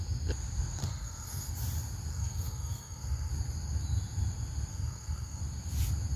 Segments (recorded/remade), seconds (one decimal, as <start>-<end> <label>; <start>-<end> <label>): 0.0-0.8 recorded; 0.8-1.5 remade; 1.5-2.1 recorded; 2.1-3.3 remade; 3.3-4.7 recorded; 4.7-5.4 remade; 5.4-6.2 recorded